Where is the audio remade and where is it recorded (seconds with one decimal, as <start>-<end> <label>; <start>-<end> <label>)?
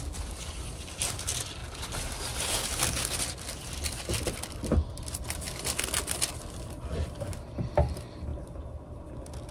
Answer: 0.0-9.5 recorded